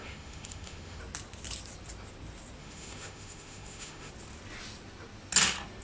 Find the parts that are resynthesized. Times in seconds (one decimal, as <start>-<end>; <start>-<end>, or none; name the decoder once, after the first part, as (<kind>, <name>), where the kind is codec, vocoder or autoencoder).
0.0-1.0 (autoencoder, DAC-VAE); 2.6-4.1